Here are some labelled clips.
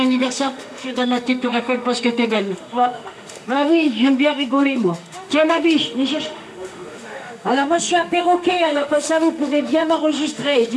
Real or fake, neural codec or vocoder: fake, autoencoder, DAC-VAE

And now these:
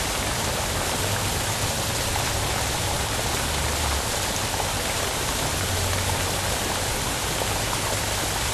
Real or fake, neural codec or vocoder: real